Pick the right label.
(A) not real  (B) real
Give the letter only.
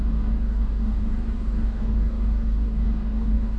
A